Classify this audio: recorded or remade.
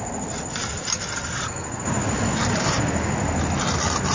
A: recorded